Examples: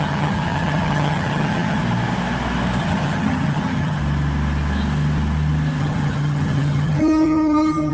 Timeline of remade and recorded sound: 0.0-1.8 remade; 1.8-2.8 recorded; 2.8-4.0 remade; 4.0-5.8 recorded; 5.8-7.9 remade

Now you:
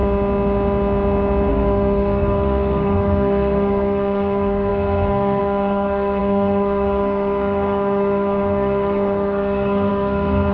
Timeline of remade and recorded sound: 0.0-1.5 recorded; 1.5-10.5 remade

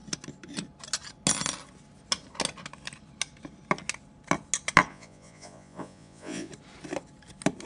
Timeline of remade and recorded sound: 0.0-4.9 recorded; 4.9-6.5 remade; 6.5-7.7 recorded

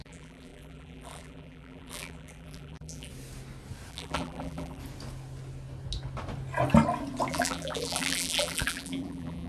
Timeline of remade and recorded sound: 0.0-3.1 remade; 3.1-3.9 recorded; 3.9-4.8 remade; 4.8-7.3 recorded; 7.3-9.5 remade

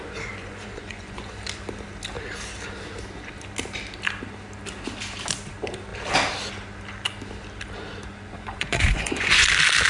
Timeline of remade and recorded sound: 0.0-0.4 recorded; 0.4-1.4 remade; 1.4-8.1 recorded; 8.1-9.5 remade; 9.5-9.9 recorded